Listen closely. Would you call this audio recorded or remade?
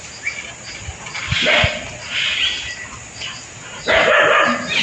recorded